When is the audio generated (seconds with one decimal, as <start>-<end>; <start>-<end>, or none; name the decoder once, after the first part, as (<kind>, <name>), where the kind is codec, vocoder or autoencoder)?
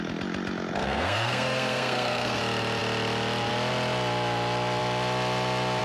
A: 0.8-2.4 (codec, SNAC)